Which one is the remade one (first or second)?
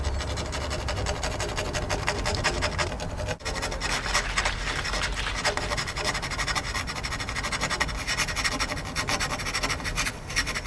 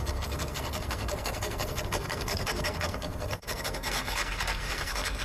second